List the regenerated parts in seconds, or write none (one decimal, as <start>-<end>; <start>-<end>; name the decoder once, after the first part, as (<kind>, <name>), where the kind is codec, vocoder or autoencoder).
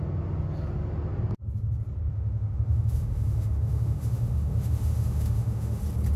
2.1-5.8 (autoencoder, DAC-VAE)